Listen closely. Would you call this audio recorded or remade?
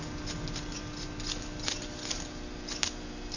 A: recorded